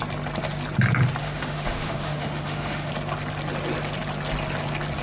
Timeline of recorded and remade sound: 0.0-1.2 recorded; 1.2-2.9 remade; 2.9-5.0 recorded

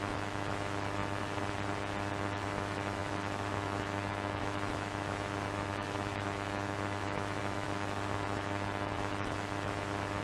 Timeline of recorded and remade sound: 0.0-1.0 remade; 1.0-2.2 recorded; 2.2-10.2 remade

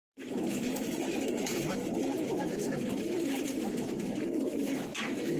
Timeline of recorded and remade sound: 0.0-5.4 remade

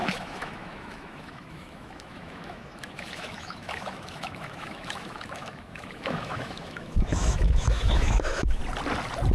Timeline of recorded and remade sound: 0.0-8.6 remade; 8.6-9.3 recorded

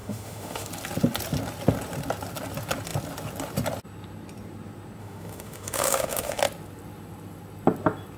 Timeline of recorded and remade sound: 0.0-0.7 remade; 0.7-5.0 recorded; 5.0-6.4 remade; 6.4-8.2 recorded

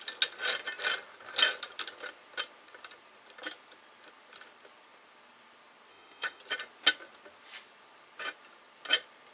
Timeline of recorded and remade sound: 0.0-5.9 recorded; 5.9-6.4 remade; 6.4-9.3 recorded

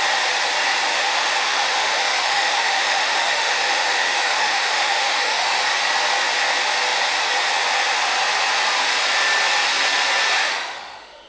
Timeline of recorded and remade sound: 0.0-0.9 recorded; 0.9-5.6 remade; 5.6-10.4 recorded; 10.4-11.3 remade

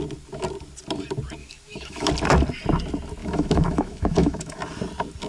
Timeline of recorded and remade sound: 0.0-1.4 recorded; 1.4-2.1 remade; 2.1-3.2 recorded; 3.2-4.6 remade; 4.6-5.3 recorded